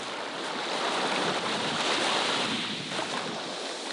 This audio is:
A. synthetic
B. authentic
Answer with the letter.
B